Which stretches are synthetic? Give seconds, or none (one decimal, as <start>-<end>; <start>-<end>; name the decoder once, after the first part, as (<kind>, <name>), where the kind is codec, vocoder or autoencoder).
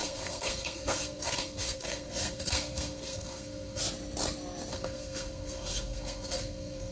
0.0-3.8 (codec, SNAC); 4.7-6.9